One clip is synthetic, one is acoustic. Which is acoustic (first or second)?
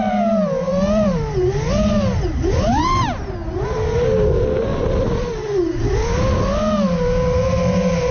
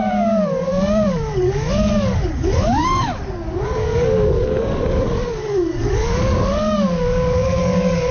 first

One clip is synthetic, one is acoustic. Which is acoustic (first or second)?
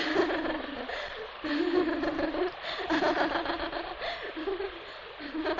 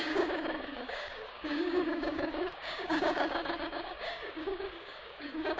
first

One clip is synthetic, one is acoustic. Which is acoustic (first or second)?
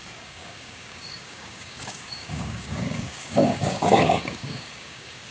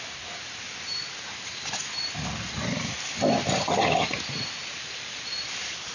second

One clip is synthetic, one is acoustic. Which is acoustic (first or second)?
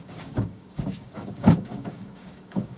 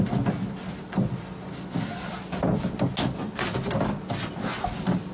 second